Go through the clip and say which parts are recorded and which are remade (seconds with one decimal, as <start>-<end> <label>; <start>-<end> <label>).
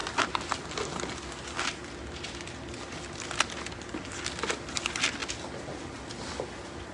0.0-6.9 recorded